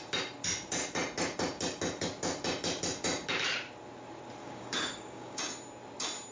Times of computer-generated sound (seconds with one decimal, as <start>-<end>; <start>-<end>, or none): 4.4-5.4